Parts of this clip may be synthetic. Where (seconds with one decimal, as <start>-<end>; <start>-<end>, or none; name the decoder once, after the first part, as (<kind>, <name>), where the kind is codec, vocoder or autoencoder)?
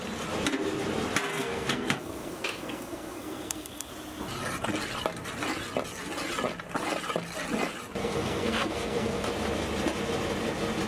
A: 1.3-3.9 (codec, SNAC); 8.0-9.3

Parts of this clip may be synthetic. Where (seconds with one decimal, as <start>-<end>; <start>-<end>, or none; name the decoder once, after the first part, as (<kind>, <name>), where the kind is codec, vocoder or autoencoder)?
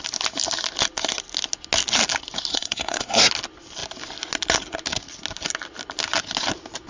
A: 2.5-3.3 (codec, SNAC)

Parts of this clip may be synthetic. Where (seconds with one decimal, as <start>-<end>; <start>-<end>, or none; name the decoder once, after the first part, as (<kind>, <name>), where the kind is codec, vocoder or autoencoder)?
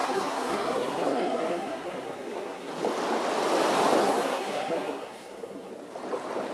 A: 0.0-2.7 (codec, SNAC); 4.0-5.7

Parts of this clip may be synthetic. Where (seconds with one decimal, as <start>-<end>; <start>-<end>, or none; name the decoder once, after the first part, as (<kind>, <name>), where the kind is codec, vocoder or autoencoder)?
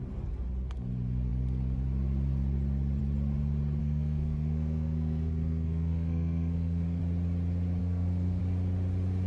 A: 3.8-7.0 (codec, SNAC); 7.8-8.4